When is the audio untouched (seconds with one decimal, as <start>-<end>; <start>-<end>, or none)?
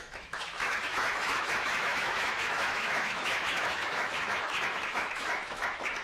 none